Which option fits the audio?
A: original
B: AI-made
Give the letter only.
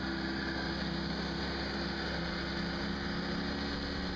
A